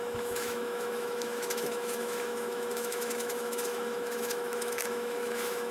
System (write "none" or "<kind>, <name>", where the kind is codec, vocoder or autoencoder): autoencoder, DAC-VAE